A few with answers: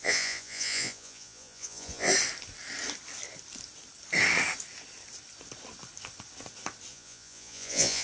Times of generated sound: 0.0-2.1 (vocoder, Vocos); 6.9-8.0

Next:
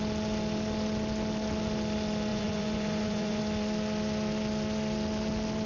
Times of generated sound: 2.3-3.4 (vocoder, Vocos)

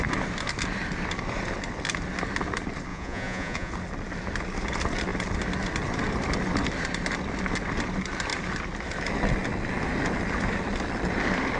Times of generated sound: 2.9-3.7 (vocoder, Vocos)

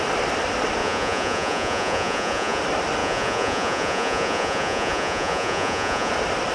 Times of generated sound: 0.8-2.6 (vocoder, Vocos); 3.0-6.1

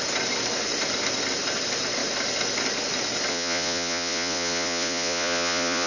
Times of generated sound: 3.3-5.9 (vocoder, Vocos)

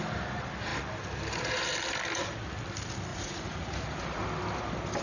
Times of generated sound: 3.1-4.2 (vocoder, Vocos)

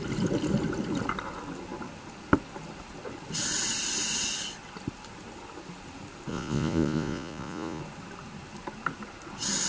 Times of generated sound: 6.3-7.8 (vocoder, Vocos)